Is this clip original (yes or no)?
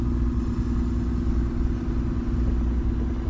yes